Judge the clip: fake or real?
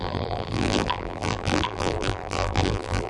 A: fake